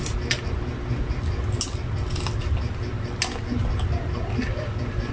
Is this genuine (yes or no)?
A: yes